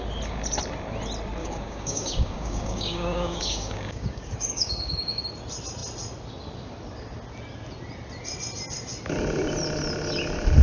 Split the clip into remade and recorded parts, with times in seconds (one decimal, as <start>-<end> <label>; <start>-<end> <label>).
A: 0.0-1.4 recorded; 1.4-5.2 remade; 5.2-10.6 recorded